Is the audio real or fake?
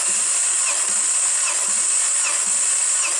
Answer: real